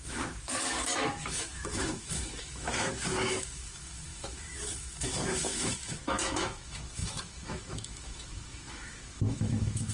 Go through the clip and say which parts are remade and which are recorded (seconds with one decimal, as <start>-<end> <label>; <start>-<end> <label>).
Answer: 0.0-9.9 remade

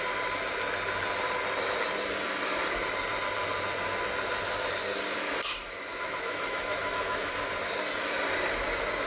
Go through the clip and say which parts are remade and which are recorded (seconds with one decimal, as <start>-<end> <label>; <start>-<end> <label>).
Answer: 0.0-5.9 recorded; 5.9-7.3 remade; 7.3-9.1 recorded

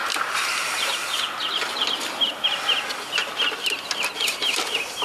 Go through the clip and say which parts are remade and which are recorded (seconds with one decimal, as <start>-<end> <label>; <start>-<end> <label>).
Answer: 0.0-1.2 remade; 1.2-5.0 recorded